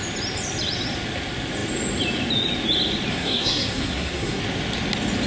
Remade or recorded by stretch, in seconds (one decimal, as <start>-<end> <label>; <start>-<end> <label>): 0.0-3.1 recorded; 3.1-4.4 remade; 4.4-5.3 recorded